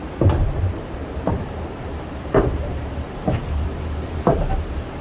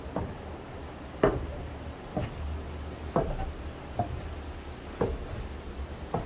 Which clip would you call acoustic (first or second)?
second